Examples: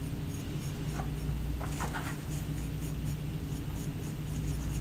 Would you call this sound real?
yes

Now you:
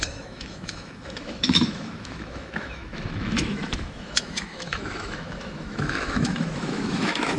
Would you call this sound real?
no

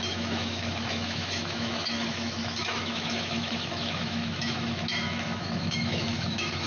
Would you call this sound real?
no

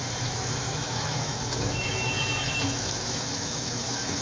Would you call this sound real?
no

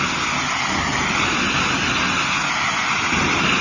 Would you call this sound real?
yes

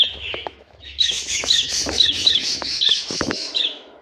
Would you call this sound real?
no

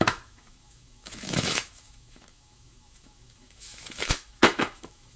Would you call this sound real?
no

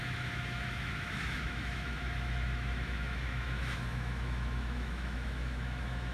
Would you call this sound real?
no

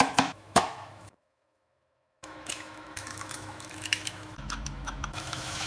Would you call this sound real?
no